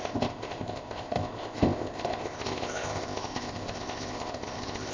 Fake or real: fake